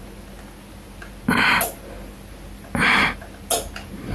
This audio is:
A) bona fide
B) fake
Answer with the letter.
A